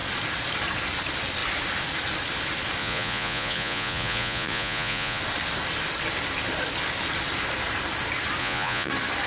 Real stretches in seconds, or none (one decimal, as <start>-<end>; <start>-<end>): 0.0-2.8; 5.2-8.4; 8.9-9.3

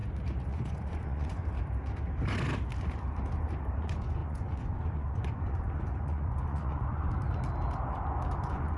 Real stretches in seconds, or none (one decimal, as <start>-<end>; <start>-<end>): 0.0-0.5; 1.4-3.8; 7.1-8.4

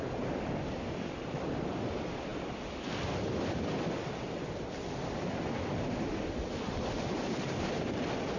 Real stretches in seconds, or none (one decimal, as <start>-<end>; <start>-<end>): 0.0-8.4

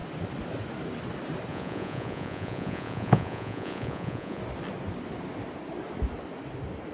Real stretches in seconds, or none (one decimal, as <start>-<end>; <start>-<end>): 0.0-1.5; 4.4-6.9

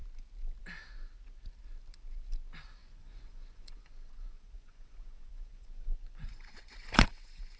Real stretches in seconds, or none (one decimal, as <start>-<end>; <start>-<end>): 0.0-2.8